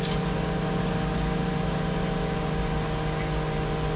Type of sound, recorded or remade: recorded